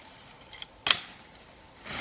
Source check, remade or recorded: recorded